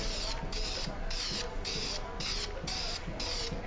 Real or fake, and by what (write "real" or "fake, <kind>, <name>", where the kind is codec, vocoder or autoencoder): real